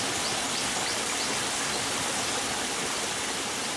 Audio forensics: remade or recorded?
recorded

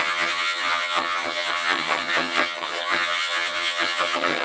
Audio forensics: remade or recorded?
remade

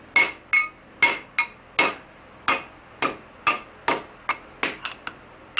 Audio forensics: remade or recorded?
recorded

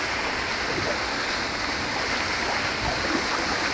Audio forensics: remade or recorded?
recorded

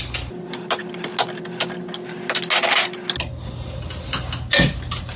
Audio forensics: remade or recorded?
recorded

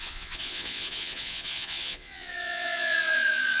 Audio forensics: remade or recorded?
remade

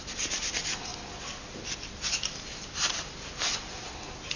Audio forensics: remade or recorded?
recorded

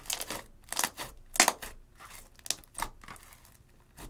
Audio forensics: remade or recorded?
recorded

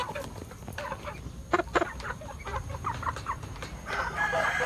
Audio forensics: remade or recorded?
remade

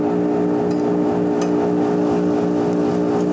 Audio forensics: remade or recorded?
recorded